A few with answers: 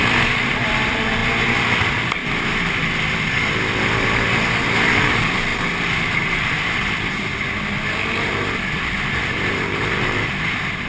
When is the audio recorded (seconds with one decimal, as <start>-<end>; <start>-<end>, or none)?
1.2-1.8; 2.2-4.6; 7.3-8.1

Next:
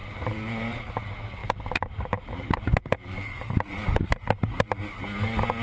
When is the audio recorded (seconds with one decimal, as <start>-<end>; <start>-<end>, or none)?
0.9-1.4; 4.8-5.6

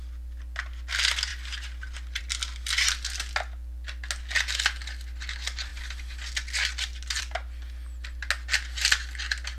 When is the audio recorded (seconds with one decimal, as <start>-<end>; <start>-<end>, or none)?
0.0-9.6